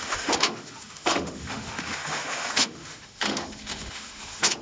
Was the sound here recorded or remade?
remade